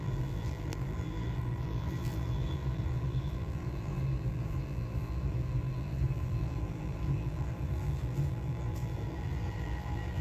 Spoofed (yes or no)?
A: yes